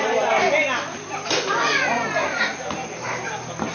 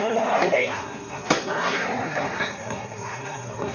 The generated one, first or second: second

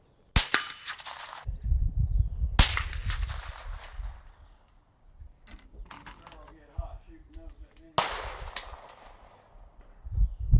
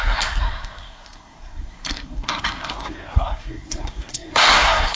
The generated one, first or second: second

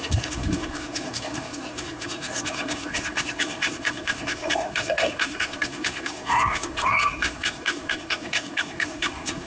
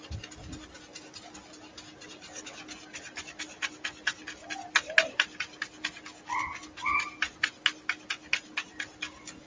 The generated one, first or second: first